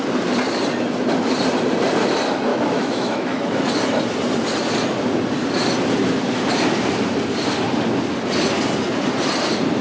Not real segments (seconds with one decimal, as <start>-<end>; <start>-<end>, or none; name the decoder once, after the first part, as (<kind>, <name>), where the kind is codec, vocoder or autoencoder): 2.5-3.6 (autoencoder, DAC-VAE)